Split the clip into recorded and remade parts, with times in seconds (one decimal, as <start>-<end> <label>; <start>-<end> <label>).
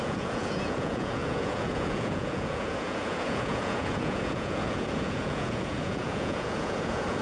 0.0-7.2 remade